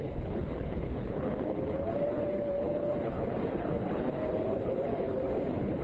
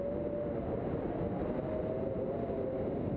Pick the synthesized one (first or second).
first